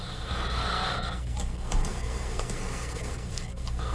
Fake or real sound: fake